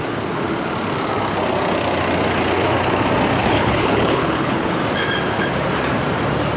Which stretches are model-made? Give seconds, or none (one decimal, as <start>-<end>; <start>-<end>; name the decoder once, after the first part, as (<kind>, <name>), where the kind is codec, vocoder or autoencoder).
3.4-4.8 (codec, HILCodec)